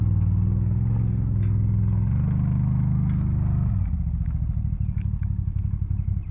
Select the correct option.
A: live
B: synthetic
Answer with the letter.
A